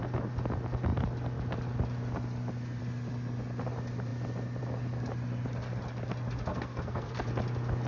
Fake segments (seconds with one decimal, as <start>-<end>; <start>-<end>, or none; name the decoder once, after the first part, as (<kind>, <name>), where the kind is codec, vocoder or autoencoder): 6.5-7.3 (codec, SNAC)